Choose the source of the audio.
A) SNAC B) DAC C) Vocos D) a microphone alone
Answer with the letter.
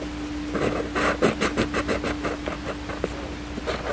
D